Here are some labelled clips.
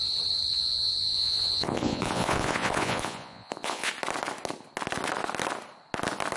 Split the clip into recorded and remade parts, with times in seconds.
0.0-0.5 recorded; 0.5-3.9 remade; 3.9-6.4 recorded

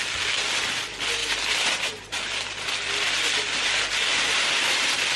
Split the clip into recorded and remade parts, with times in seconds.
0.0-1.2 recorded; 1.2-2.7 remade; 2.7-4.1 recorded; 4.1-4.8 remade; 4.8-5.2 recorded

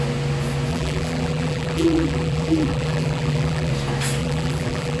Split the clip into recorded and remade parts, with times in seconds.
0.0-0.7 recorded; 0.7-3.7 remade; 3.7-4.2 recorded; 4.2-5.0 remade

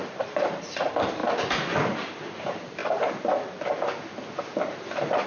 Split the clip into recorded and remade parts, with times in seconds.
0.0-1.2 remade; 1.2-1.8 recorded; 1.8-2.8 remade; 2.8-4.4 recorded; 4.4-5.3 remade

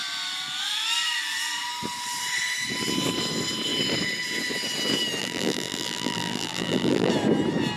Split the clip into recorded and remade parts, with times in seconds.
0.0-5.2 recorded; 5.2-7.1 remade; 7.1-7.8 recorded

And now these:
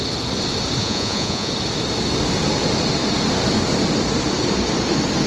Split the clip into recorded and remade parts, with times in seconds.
0.0-0.8 recorded; 0.8-1.5 remade; 1.5-5.3 recorded

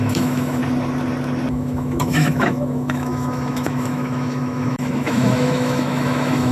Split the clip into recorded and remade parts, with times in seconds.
0.0-0.6 remade; 0.6-1.5 recorded; 1.5-6.5 remade